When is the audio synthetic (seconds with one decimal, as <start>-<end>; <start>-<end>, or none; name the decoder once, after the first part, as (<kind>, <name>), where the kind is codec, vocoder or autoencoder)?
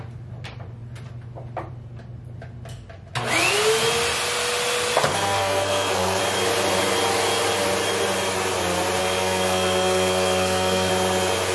5.1-6.2 (codec, SNAC); 9.0-10.9